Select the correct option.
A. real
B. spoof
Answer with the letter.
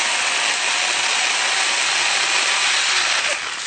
A